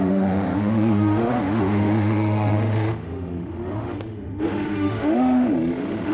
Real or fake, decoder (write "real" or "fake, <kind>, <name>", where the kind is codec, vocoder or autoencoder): fake, autoencoder, DAC-VAE